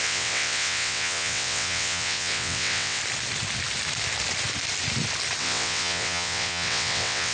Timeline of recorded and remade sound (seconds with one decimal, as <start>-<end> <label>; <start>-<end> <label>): 0.0-3.0 remade; 3.0-5.4 recorded; 5.4-7.3 remade